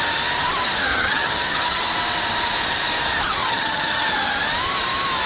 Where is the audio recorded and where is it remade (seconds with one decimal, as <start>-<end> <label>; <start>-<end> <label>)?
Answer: 0.0-0.9 recorded; 0.9-1.8 remade; 1.8-3.4 recorded; 3.4-4.1 remade; 4.1-5.3 recorded